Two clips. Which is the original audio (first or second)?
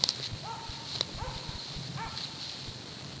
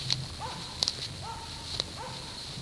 second